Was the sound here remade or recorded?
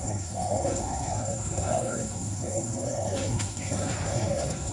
remade